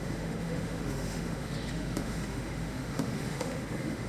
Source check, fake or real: fake